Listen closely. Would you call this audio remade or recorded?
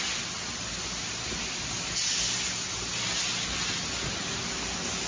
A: recorded